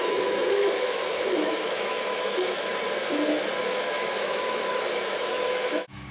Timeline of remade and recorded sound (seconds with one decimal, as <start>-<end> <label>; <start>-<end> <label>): 0.0-2.7 remade; 2.7-3.6 recorded; 3.6-6.1 remade